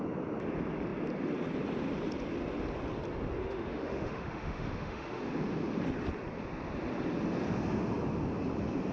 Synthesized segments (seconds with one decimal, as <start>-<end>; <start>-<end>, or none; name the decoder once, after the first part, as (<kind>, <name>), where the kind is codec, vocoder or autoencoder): 3.4-5.2 (autoencoder, DAC-VAE)

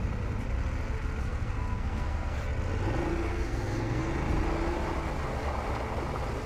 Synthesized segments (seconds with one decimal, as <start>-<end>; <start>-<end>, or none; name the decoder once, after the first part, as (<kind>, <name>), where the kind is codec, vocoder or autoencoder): 1.2-2.4 (codec, SNAC); 3.3-4.1

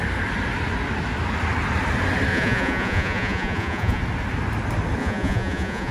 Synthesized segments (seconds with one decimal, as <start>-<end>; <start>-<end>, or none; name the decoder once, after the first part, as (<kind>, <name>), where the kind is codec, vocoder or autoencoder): 2.3-4.0 (vocoder, Vocos); 5.0-5.9

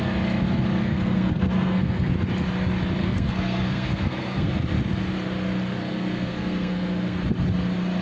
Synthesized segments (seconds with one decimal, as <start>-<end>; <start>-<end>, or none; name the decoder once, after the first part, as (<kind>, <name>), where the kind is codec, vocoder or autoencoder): 0.8-2.1 (codec, SNAC); 3.0-4.5; 5.8-7.2

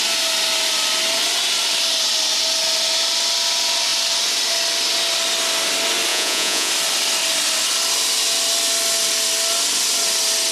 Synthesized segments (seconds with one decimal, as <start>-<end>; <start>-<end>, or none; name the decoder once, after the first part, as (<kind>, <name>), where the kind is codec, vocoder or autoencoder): 6.1-6.7 (vocoder, Vocos)